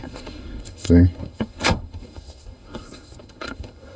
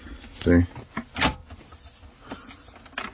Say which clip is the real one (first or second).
second